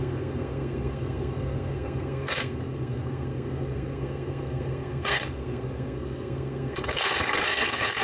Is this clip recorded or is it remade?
remade